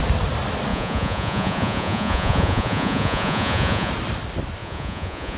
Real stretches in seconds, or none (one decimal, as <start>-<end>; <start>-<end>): 0.0-0.7; 3.9-4.6